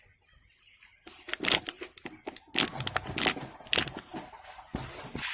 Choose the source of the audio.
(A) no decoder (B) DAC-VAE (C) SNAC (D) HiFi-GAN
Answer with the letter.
A